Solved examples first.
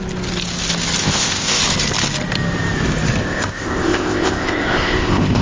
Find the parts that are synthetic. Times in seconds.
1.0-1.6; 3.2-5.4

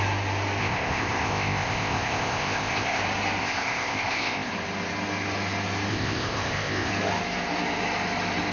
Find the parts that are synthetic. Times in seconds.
0.6-3.0; 3.4-4.5; 5.9-6.9

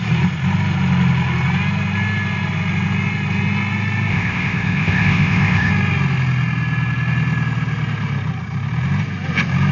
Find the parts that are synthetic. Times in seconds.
4.1-5.7

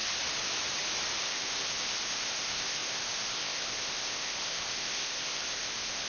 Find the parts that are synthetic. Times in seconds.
1.2-6.1

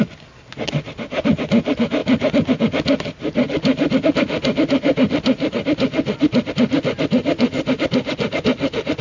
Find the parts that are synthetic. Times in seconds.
none

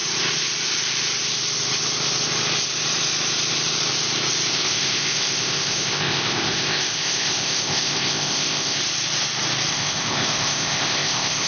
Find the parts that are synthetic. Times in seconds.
4.5-8.8; 9.7-11.5

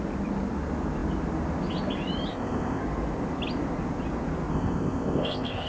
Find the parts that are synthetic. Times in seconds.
2.3-2.8; 4.5-5.7